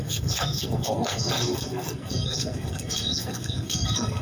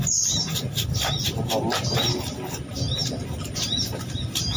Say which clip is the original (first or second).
second